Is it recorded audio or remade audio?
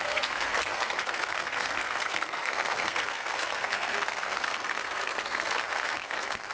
remade